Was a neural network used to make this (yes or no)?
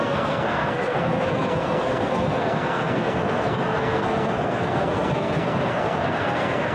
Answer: yes